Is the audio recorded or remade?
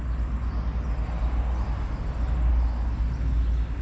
recorded